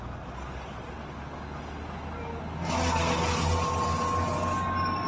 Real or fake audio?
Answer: real